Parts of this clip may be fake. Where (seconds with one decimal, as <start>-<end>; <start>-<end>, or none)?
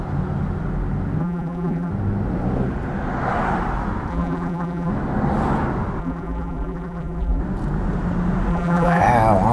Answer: 1.2-1.9; 4.1-4.9; 6.0-7.4; 8.5-9.0